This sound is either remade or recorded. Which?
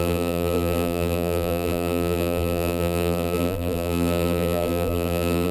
remade